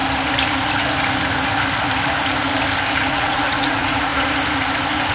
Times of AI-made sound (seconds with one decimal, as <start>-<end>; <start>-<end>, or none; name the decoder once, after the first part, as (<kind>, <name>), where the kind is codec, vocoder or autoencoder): 3.1-4.1 (vocoder, Vocos)